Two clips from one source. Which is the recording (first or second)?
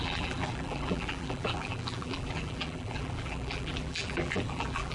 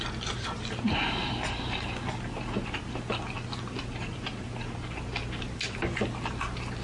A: second